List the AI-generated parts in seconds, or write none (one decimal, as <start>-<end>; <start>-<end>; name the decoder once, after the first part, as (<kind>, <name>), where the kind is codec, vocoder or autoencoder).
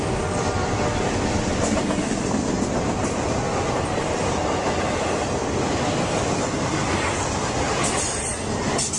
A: none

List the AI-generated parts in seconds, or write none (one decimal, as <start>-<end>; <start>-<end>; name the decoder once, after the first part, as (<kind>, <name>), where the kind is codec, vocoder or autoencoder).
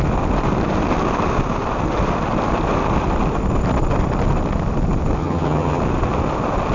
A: 5.2-5.8 (vocoder, HiFi-GAN)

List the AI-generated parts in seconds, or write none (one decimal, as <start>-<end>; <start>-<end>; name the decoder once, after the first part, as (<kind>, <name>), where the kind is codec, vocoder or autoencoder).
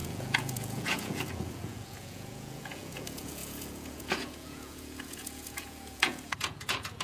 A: 0.0-7.0 (vocoder, Vocos)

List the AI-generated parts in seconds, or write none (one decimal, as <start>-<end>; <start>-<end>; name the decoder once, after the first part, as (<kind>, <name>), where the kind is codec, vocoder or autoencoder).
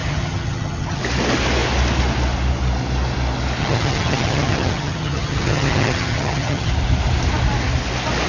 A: 0.0-1.0 (vocoder, HiFi-GAN); 3.6-6.7